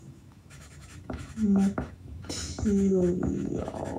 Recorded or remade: remade